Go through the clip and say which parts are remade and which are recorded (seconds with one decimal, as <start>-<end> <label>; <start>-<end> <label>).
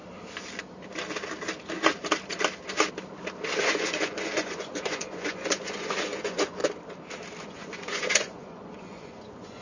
0.0-3.6 recorded; 3.6-6.6 remade; 6.6-7.4 recorded; 7.4-9.6 remade